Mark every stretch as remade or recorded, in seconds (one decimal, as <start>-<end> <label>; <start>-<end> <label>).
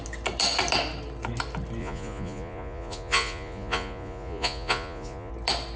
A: 0.0-1.8 recorded; 1.8-5.3 remade; 5.3-5.8 recorded